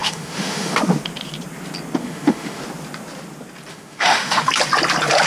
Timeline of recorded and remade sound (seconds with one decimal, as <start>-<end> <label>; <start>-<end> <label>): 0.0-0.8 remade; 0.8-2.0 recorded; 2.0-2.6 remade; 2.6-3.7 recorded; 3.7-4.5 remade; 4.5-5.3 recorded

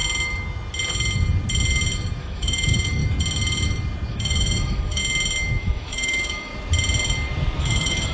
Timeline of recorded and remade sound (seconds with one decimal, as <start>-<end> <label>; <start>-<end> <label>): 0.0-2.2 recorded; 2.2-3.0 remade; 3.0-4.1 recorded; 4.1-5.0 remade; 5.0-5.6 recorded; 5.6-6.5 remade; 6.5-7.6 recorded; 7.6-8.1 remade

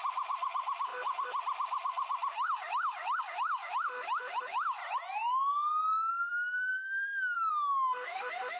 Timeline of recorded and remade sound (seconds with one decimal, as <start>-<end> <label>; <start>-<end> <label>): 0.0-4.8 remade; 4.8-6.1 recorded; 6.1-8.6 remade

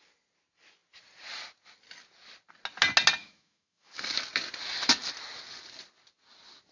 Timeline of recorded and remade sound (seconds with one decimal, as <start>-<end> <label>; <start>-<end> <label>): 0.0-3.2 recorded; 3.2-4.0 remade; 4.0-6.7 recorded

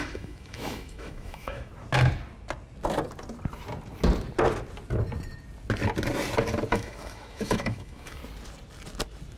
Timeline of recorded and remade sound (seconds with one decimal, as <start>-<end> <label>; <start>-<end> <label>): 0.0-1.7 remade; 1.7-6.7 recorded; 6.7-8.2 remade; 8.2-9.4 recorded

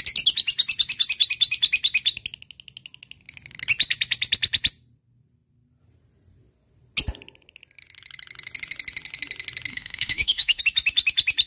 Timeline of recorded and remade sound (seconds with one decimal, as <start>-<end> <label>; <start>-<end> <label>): 0.0-9.7 recorded; 9.7-10.6 remade; 10.6-11.5 recorded

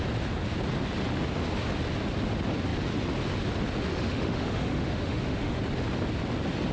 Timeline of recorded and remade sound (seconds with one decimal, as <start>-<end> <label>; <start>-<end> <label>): 0.0-3.9 recorded; 3.9-5.6 remade; 5.6-6.7 recorded